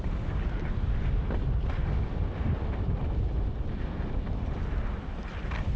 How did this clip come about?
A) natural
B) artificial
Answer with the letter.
A